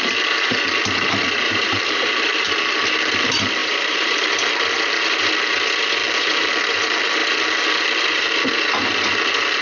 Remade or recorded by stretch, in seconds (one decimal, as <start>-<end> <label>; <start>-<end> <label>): 0.0-1.5 recorded; 1.5-2.5 remade; 2.5-3.6 recorded; 3.6-4.3 remade; 4.3-6.0 recorded; 6.0-6.5 remade; 6.5-9.6 recorded